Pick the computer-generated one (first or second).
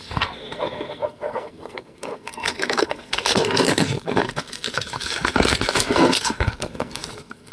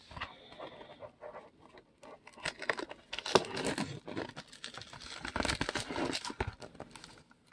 first